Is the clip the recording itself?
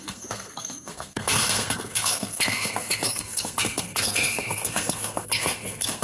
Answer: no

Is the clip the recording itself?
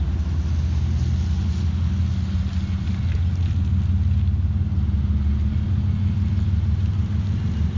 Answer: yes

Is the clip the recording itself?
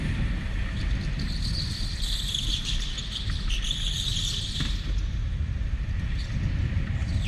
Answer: yes